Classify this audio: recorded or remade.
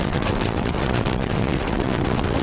remade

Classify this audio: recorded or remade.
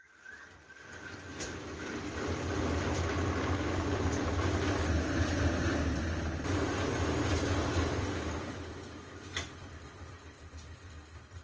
recorded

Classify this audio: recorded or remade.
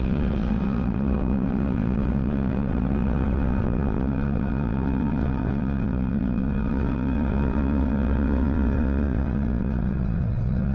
remade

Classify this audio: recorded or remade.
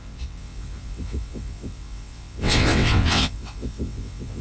remade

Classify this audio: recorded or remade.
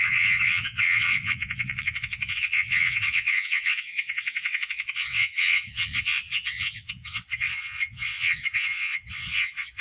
remade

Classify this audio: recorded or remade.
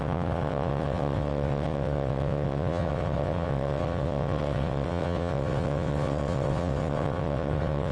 remade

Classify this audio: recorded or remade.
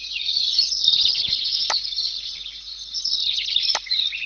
recorded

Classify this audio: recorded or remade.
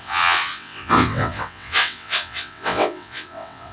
remade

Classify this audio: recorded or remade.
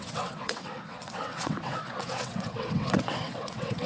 remade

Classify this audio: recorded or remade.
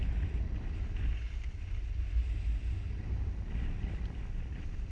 recorded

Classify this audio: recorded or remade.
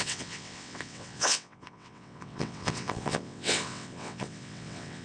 remade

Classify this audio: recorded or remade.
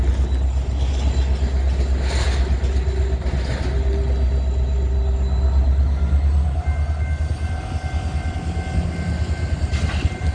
recorded